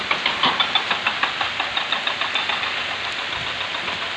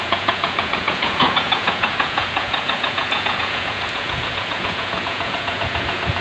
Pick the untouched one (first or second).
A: first